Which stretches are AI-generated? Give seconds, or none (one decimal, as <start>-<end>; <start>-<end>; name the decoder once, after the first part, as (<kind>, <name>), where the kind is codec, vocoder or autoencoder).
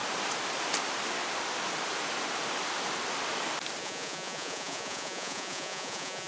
3.8-6.3 (vocoder, Vocos)